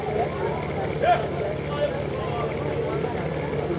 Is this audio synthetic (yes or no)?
no